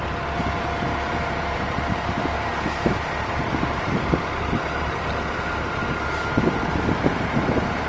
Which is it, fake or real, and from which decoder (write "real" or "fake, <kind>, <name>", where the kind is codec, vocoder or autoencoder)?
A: fake, vocoder, BigVGAN v2